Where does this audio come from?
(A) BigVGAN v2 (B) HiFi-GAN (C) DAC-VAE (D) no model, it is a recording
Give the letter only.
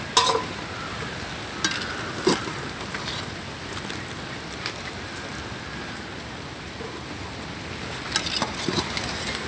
D